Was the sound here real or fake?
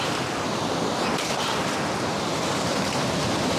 fake